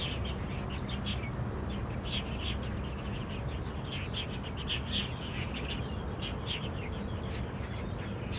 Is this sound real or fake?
real